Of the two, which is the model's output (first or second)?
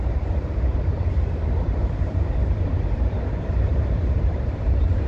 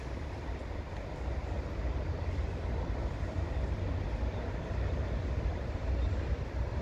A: first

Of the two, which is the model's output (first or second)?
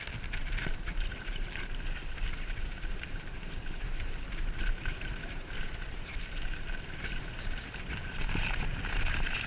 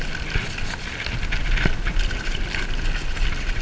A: first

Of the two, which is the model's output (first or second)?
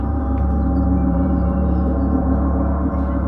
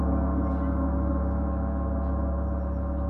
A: first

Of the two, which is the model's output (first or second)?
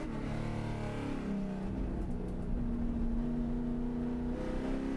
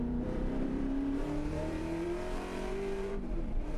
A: second